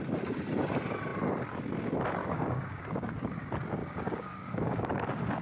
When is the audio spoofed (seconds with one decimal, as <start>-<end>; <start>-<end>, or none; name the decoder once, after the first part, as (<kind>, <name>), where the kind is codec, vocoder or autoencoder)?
2.2-3.4 (codec, DAC); 3.8-5.4